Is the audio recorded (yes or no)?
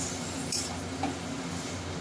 yes